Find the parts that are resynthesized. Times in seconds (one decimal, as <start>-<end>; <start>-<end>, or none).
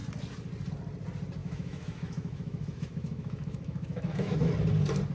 1.4-4.5